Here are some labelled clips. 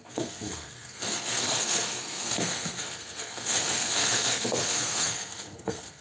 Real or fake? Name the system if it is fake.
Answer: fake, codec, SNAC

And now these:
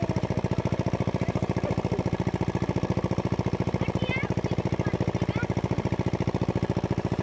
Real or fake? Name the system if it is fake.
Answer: real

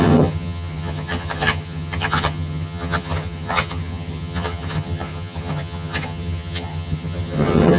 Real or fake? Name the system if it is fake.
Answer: fake, vocoder, HiFi-GAN